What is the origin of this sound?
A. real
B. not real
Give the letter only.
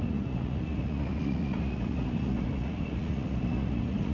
B